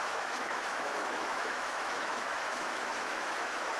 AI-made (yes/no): yes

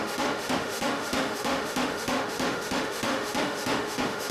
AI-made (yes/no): yes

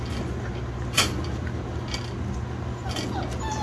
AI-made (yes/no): no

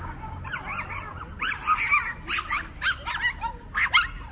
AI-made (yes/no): no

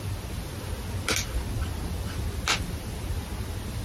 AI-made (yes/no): no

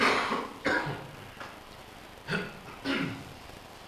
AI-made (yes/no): no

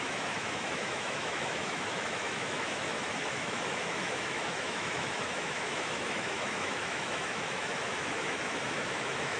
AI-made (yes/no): yes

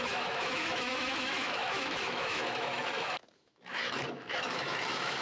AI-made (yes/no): yes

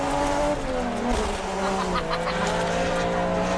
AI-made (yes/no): no